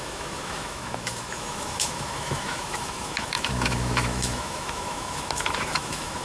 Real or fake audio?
fake